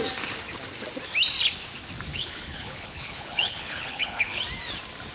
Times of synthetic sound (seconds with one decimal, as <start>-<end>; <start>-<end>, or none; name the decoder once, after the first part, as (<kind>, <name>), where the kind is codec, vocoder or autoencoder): 2.1-4.4 (codec, HILCodec)